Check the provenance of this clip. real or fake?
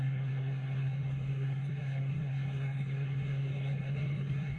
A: fake